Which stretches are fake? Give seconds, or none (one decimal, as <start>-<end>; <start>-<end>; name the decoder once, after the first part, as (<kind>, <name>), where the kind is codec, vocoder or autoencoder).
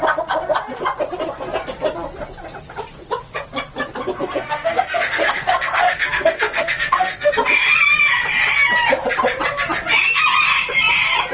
4.2-7.3 (codec, SNAC)